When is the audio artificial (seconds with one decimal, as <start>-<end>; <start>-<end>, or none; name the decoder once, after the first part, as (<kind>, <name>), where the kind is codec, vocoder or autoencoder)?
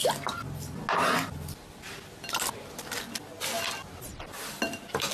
none